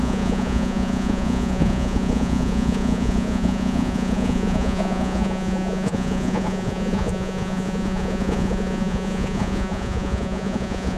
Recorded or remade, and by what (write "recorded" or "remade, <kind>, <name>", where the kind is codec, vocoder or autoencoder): remade, vocoder, Vocos